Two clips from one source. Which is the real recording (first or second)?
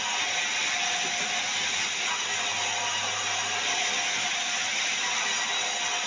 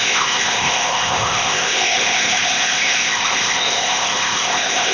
first